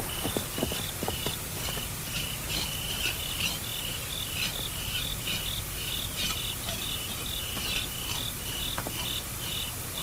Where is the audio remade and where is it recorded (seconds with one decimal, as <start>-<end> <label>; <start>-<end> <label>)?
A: 0.0-10.0 recorded